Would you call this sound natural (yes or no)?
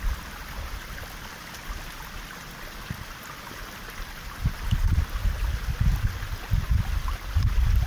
yes